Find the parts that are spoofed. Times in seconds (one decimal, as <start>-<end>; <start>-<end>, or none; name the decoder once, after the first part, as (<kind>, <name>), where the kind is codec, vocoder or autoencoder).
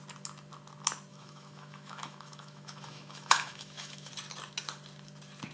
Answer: 1.1-4.1 (autoencoder, DAC-VAE)